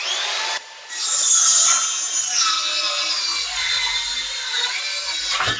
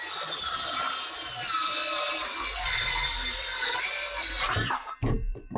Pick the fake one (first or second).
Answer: second